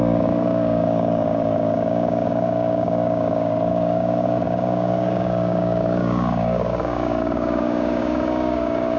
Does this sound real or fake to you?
fake